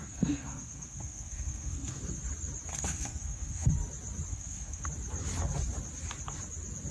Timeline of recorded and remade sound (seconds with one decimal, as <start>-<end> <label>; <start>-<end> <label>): 0.0-2.0 remade; 2.0-2.7 recorded; 2.7-3.7 remade; 3.7-4.3 recorded; 4.3-4.9 remade; 4.9-6.9 recorded